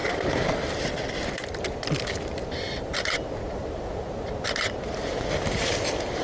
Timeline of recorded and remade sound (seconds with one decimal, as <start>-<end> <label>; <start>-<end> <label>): 0.0-3.4 recorded; 3.4-3.9 remade; 3.9-5.3 recorded; 5.3-6.2 remade